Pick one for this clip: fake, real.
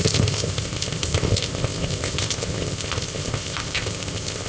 fake